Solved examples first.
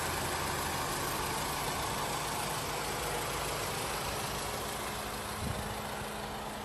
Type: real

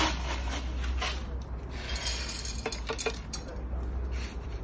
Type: real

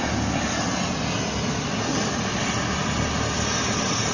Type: real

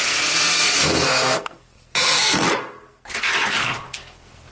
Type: fake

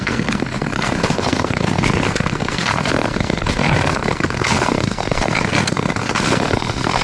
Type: fake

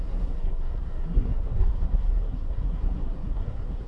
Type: fake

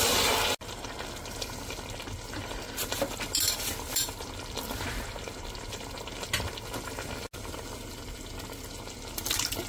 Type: real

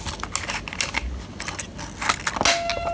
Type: real